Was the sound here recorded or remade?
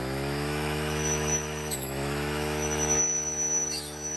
remade